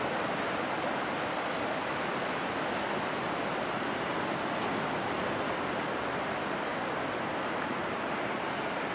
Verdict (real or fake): real